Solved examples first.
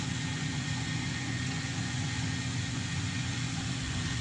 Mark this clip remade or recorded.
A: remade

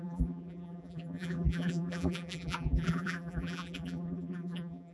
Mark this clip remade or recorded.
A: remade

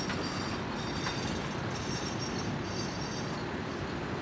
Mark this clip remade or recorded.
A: recorded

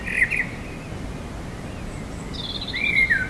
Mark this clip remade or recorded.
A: recorded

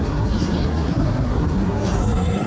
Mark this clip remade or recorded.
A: remade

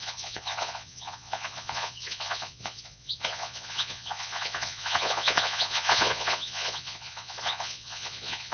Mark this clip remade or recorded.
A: remade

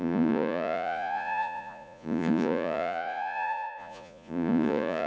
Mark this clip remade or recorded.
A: remade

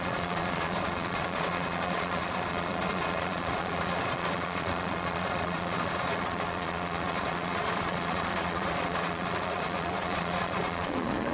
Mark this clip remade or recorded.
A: remade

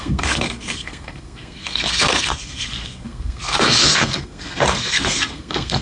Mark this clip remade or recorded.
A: remade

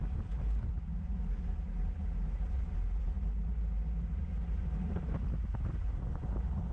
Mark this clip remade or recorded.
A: recorded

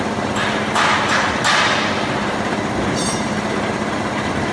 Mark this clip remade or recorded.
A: recorded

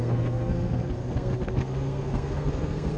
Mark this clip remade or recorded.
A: remade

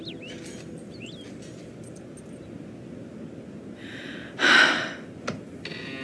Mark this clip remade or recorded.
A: recorded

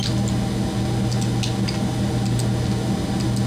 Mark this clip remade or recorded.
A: recorded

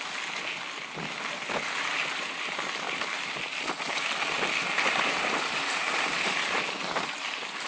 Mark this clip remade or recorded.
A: recorded